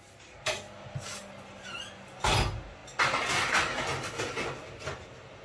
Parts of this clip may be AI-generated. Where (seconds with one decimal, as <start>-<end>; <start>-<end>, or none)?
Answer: none